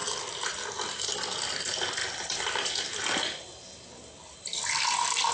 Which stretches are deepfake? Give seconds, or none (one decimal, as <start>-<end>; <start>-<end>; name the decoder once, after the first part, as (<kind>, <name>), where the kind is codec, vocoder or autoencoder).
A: none